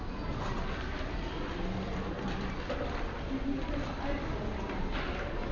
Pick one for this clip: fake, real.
real